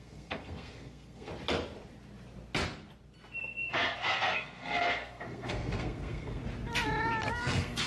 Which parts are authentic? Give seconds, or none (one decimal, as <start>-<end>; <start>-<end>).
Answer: 1.3-3.4; 6.4-7.3